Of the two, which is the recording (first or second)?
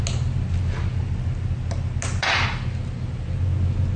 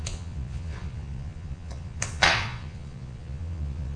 first